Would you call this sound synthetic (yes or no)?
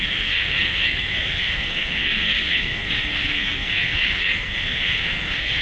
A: yes